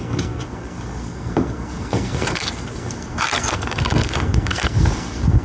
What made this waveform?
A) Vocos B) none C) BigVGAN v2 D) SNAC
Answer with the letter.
D